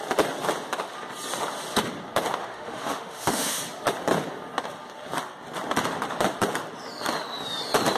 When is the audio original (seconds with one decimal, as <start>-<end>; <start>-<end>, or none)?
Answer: 0.0-2.4; 3.6-8.0